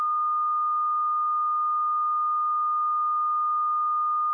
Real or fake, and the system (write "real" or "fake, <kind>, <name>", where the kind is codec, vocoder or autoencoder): real